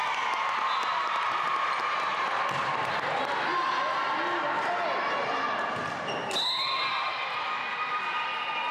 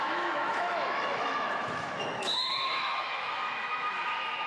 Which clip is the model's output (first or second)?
second